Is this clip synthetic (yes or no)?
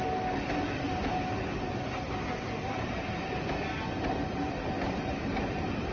no